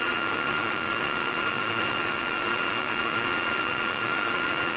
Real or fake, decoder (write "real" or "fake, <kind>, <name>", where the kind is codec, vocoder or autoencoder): fake, vocoder, Vocos